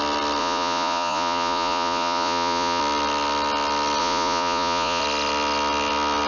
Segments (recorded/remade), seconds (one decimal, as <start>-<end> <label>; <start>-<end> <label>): 0.0-0.4 recorded; 0.4-2.8 remade; 2.8-4.0 recorded; 4.0-5.0 remade; 5.0-6.3 recorded